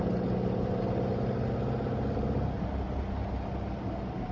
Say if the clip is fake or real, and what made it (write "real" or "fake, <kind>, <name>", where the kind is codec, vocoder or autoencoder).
real